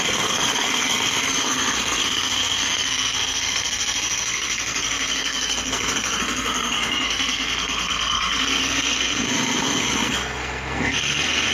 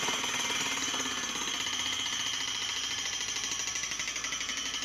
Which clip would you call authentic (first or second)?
second